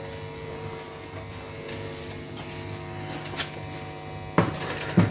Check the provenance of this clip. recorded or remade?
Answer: recorded